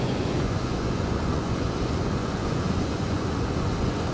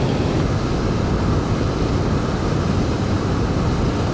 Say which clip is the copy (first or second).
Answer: first